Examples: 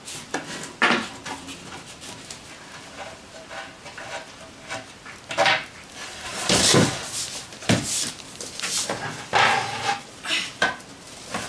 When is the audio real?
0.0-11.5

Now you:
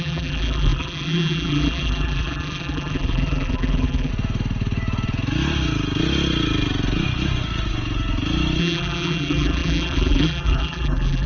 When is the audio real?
4.1-8.6

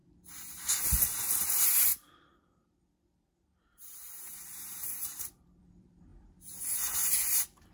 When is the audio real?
0.0-1.9; 5.6-7.7

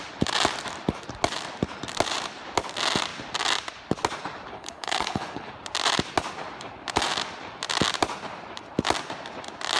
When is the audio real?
0.0-4.5; 5.5-9.8

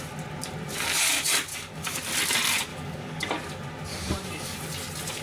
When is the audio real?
0.0-1.5; 2.1-2.7; 3.3-3.9; 4.6-5.2

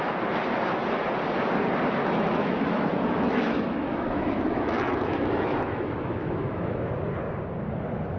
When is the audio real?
0.0-2.0; 6.9-8.2

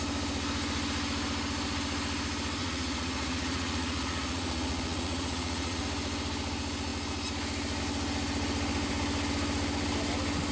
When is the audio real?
0.0-2.6; 5.8-10.5

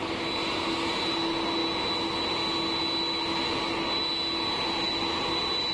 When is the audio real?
0.0-5.7